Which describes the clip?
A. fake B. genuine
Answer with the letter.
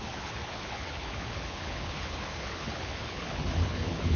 A